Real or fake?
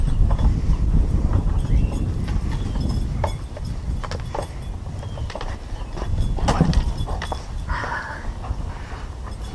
real